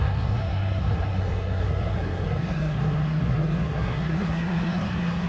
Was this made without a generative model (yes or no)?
no